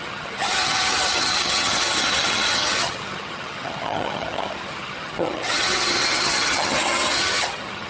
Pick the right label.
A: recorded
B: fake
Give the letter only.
B